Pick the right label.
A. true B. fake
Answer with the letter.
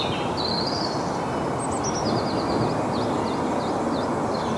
A